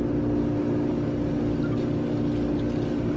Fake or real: real